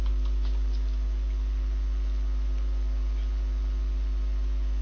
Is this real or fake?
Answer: real